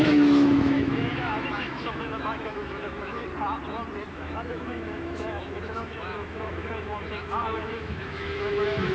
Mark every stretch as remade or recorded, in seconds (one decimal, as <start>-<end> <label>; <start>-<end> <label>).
0.0-3.2 remade; 3.2-4.1 recorded; 4.1-8.9 remade